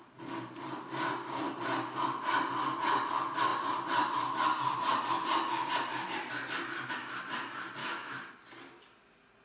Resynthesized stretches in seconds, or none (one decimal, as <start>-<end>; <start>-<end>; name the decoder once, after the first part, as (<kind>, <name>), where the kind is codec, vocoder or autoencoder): 7.8-8.3 (autoencoder, DAC-VAE)